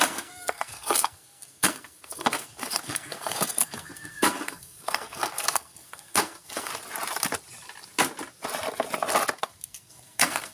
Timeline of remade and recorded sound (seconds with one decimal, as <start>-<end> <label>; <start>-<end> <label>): 0.0-6.7 remade; 6.7-9.4 recorded; 9.4-10.5 remade